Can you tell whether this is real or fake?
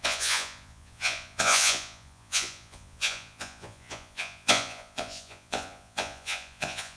fake